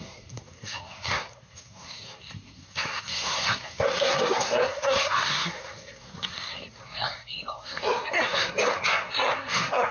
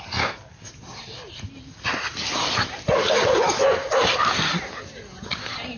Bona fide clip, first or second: second